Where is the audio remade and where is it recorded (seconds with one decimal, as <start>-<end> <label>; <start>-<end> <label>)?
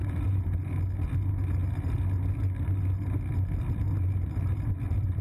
0.0-0.8 remade; 0.8-5.2 recorded